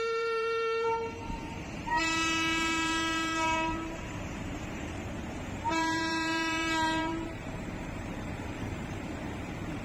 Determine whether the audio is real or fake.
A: fake